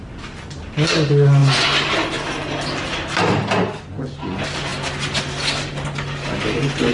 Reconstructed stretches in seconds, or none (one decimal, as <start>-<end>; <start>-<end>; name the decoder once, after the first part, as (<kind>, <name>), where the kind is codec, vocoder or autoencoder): none